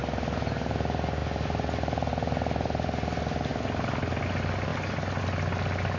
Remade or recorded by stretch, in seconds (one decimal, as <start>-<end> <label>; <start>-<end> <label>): 0.0-6.0 recorded